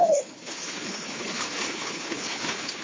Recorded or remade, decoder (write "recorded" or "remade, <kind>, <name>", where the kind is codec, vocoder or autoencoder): remade, codec, HILCodec